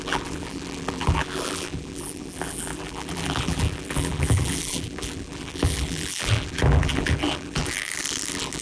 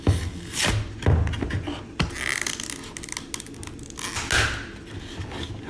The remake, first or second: first